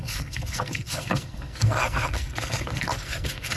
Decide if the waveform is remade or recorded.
remade